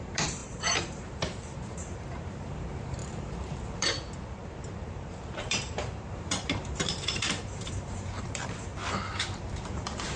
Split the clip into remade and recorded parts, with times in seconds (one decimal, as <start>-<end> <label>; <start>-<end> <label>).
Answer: 0.0-8.7 remade; 8.7-9.4 recorded; 9.4-10.2 remade